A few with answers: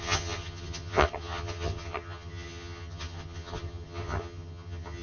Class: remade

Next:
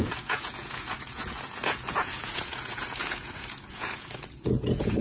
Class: remade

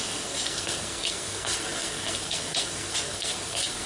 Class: remade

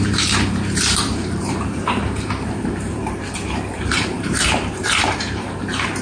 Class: remade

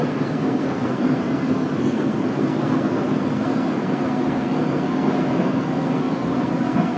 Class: remade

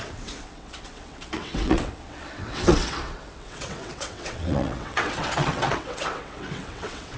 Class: remade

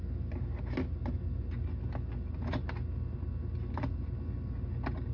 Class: recorded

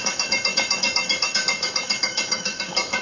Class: remade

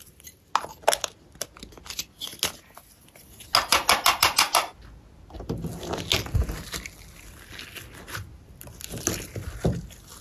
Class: recorded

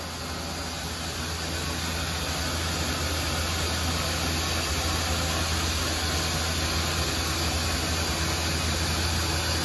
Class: recorded